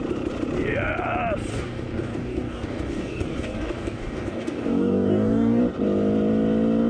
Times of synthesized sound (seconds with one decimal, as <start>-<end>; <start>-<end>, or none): 1.5-5.6